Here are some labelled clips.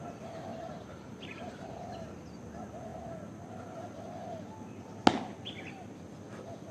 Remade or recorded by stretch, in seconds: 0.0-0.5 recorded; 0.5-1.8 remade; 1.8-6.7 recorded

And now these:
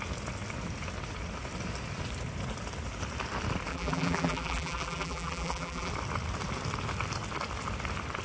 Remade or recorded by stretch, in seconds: 0.0-3.7 recorded; 3.7-5.9 remade; 5.9-8.2 recorded